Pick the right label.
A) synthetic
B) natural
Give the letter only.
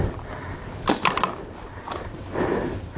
B